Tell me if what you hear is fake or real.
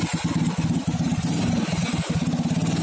real